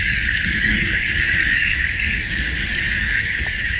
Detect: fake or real fake